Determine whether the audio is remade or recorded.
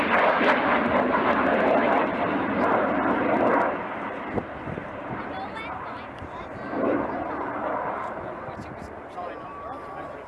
recorded